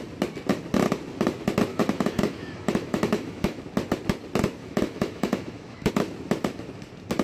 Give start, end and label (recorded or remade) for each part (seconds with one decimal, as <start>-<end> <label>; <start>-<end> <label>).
0.0-1.7 recorded; 1.7-3.6 remade; 3.6-4.6 recorded; 4.6-5.9 remade; 5.9-7.2 recorded

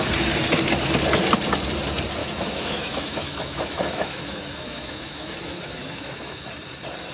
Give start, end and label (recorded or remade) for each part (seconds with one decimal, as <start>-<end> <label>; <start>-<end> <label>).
0.0-2.2 recorded; 2.2-6.5 remade; 6.5-7.1 recorded

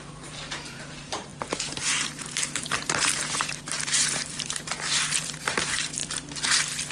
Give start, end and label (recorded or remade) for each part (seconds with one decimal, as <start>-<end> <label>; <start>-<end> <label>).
0.0-6.0 remade; 6.0-6.9 recorded

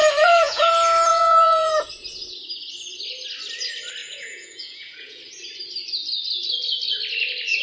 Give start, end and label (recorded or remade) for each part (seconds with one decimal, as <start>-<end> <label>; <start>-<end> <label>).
0.0-0.7 remade; 0.7-1.1 recorded; 1.1-1.9 remade; 1.9-4.0 recorded; 4.0-5.2 remade; 5.2-7.6 recorded

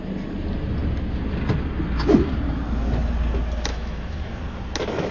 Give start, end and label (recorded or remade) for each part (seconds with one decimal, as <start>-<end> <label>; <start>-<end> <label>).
0.0-3.7 recorded; 3.7-4.3 remade; 4.3-5.1 recorded

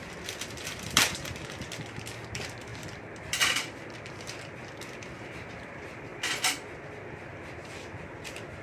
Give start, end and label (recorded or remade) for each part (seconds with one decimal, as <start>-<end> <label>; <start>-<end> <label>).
0.0-6.1 remade; 6.1-6.8 recorded; 6.8-8.6 remade

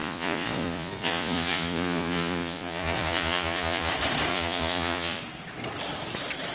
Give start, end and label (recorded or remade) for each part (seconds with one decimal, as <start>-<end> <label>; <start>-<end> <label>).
0.0-3.9 remade; 3.9-4.3 recorded; 4.3-5.2 remade; 5.2-6.5 recorded